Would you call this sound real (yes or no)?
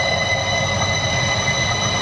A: yes